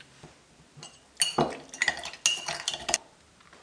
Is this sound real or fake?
real